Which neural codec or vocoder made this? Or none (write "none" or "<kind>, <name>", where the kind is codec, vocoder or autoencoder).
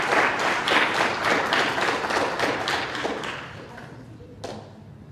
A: none